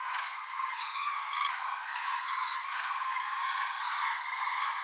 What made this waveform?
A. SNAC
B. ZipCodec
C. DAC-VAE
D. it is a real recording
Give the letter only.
A